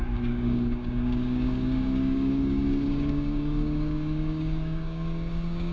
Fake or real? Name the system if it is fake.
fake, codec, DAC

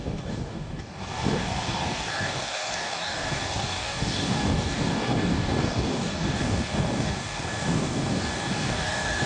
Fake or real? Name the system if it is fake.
fake, codec, DAC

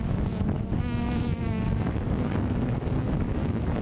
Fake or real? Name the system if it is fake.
fake, codec, DAC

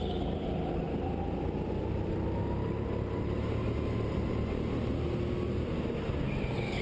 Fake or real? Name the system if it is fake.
real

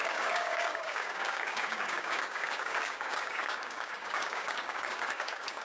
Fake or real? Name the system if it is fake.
fake, codec, DAC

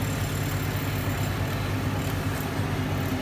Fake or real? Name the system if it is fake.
real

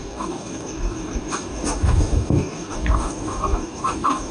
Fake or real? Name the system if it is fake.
fake, codec, DAC